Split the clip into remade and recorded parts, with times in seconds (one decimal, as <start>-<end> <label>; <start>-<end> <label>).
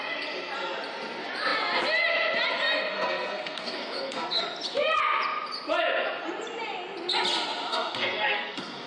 0.0-2.9 recorded; 2.9-4.4 remade; 4.4-7.7 recorded; 7.7-8.9 remade